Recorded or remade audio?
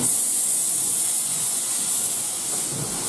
remade